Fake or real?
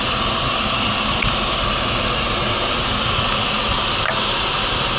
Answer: real